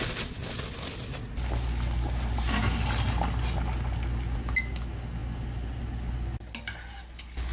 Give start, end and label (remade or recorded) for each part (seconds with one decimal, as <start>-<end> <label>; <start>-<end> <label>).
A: 0.0-7.5 recorded